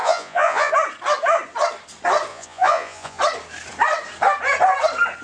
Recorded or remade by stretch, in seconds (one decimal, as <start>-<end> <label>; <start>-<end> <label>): 0.0-0.7 remade; 0.7-2.3 recorded; 2.3-3.2 remade; 3.2-5.2 recorded